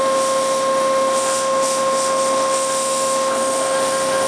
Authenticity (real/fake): fake